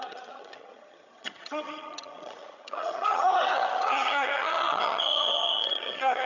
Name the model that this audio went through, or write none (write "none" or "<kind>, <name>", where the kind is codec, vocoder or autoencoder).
vocoder, HiFi-GAN